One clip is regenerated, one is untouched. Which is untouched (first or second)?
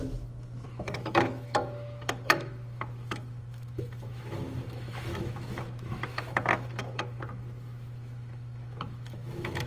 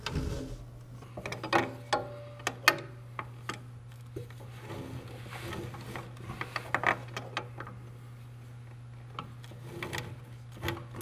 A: second